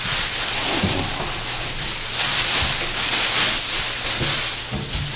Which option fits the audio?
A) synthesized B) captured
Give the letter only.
B